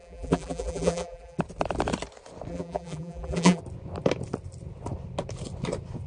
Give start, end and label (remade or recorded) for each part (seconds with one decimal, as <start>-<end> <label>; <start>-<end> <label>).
0.0-1.4 remade; 1.4-2.5 recorded; 2.5-3.6 remade; 3.6-6.1 recorded